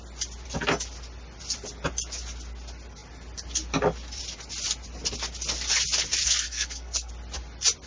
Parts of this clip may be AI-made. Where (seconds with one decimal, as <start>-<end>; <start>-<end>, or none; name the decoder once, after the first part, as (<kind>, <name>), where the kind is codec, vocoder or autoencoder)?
6.2-7.1 (codec, SNAC)